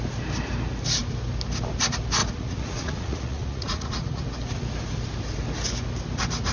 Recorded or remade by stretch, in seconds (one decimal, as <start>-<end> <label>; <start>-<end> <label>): 0.0-2.2 recorded; 2.2-4.2 remade; 4.2-6.5 recorded